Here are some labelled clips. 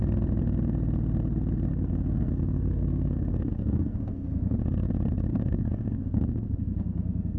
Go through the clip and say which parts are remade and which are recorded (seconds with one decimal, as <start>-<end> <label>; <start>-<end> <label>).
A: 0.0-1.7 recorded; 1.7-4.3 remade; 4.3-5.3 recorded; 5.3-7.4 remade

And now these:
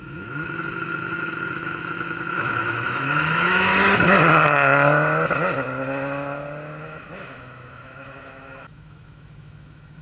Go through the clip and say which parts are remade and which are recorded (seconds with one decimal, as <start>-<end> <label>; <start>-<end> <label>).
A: 0.0-3.7 remade; 3.7-6.8 recorded; 6.8-10.0 remade

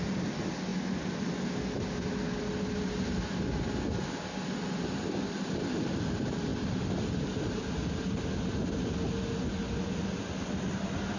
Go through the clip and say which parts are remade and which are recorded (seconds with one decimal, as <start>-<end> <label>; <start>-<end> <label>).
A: 0.0-11.2 recorded

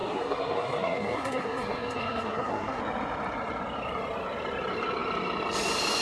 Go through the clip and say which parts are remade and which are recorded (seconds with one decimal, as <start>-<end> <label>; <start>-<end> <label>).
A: 0.0-2.8 remade; 2.8-6.0 recorded

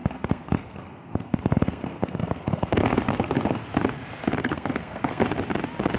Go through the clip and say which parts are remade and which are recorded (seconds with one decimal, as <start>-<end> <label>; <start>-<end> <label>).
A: 0.0-3.6 remade; 3.6-4.4 recorded; 4.4-5.2 remade; 5.2-6.0 recorded